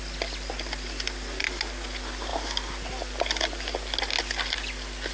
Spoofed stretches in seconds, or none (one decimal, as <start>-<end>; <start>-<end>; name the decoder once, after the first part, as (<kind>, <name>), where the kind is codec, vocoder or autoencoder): none